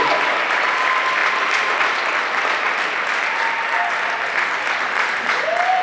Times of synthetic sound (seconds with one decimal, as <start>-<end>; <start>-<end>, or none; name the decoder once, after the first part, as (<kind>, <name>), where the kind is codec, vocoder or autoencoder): none